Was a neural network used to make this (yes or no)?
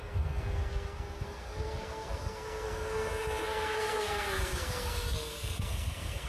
yes